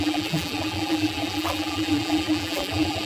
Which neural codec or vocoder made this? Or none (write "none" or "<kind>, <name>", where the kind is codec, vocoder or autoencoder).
vocoder, BigVGAN v2